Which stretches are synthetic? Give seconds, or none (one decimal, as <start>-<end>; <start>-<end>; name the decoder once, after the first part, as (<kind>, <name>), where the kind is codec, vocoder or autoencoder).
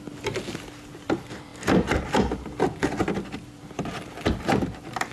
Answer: 0.0-5.1 (vocoder, BigVGAN v2)